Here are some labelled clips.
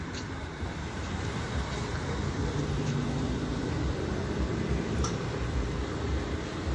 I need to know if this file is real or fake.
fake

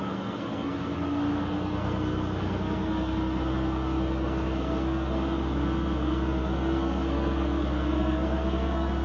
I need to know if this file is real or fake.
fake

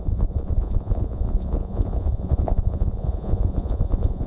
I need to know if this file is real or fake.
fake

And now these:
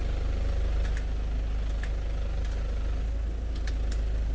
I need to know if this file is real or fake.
real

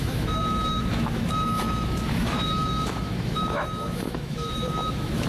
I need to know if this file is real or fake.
fake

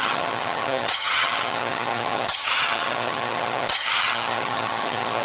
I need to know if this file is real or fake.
fake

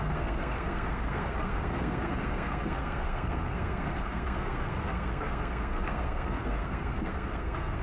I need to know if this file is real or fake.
fake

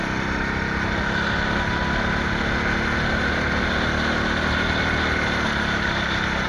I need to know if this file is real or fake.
real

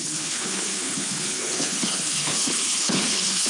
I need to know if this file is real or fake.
fake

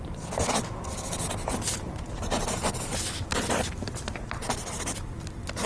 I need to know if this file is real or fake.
fake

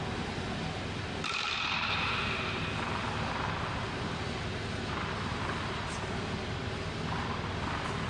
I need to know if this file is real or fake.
real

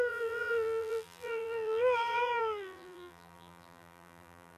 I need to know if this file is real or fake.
fake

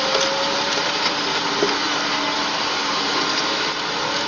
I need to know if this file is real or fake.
real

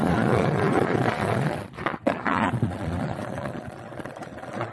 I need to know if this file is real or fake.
fake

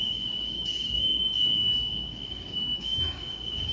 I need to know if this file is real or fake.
fake